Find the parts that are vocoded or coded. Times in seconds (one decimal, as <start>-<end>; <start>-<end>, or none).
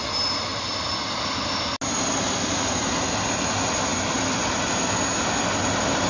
none